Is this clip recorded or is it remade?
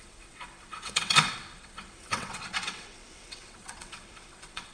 remade